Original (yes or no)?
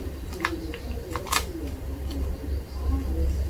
no